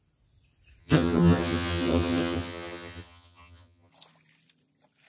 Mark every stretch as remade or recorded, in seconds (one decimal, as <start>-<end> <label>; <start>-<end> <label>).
0.0-0.8 recorded; 0.8-3.9 remade; 3.9-5.1 recorded